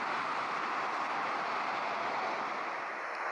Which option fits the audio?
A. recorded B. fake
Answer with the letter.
A